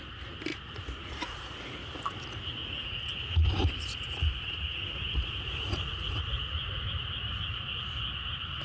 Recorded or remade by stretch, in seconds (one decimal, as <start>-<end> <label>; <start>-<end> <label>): 0.0-0.5 recorded; 0.5-1.6 remade; 1.6-2.6 recorded; 2.6-7.1 remade; 7.1-8.6 recorded